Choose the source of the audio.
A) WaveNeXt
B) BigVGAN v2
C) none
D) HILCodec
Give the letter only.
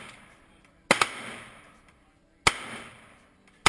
C